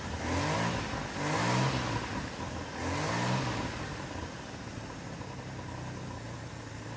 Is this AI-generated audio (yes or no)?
no